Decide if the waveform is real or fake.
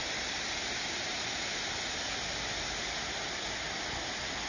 real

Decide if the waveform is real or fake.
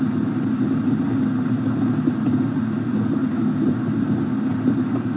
real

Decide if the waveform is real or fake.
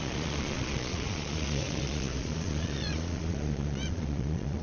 fake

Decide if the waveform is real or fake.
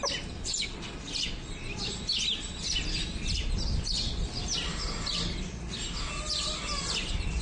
real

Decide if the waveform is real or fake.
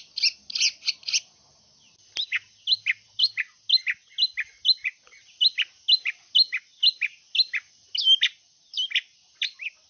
real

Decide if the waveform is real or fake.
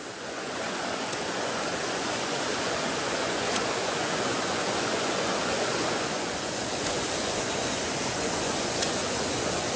fake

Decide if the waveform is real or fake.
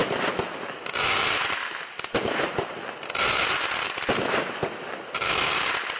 real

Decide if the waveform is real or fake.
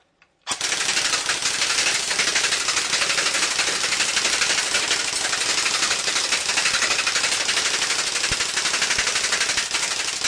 real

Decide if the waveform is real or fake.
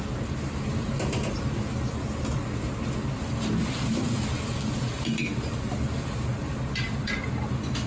real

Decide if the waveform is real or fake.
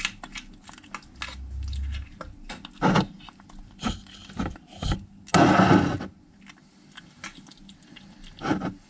real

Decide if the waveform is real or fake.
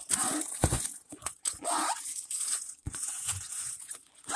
fake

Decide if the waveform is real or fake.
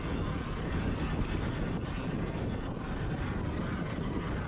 real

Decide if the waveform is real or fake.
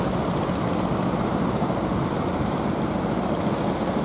real